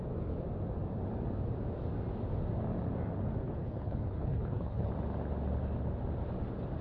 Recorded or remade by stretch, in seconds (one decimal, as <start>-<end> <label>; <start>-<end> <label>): 0.0-3.4 recorded; 3.4-4.9 remade; 4.9-6.8 recorded